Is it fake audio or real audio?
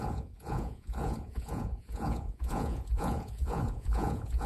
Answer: fake